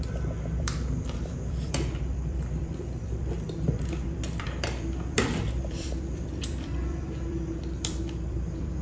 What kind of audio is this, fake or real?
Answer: fake